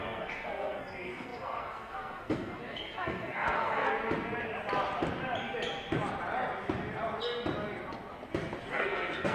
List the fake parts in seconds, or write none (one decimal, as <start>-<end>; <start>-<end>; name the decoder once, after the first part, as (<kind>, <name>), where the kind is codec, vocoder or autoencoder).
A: 0.0-3.9 (codec, SNAC); 8.6-9.3